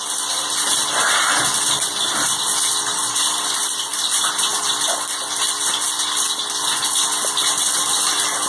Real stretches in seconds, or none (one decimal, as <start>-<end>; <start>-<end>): 0.0-8.5